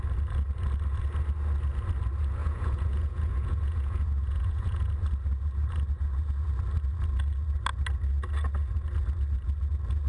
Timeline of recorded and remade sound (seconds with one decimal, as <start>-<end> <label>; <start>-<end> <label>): 0.0-2.4 recorded; 2.4-4.9 remade; 4.9-10.1 recorded